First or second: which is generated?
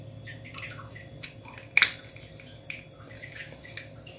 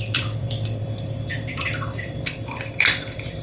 second